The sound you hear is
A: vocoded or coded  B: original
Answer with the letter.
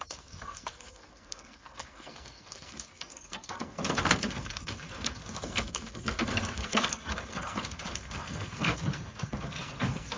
A